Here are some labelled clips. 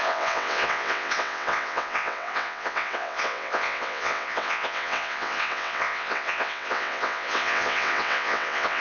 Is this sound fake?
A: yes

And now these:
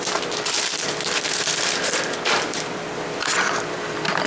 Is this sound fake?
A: no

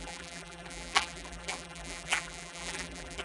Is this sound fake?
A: yes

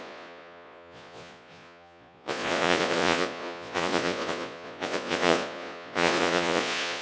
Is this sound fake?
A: yes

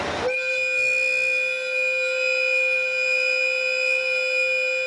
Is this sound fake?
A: no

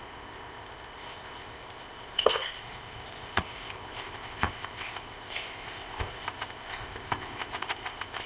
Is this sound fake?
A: yes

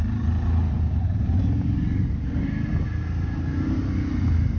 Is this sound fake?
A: no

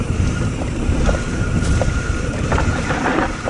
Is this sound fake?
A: yes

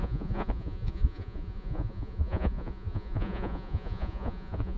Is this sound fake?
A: yes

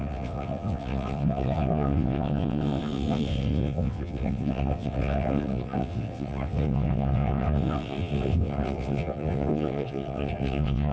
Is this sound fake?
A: yes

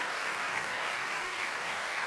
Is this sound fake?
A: yes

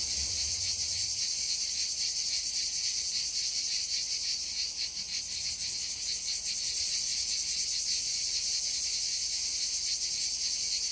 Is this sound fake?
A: no